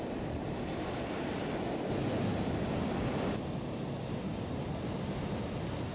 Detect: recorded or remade recorded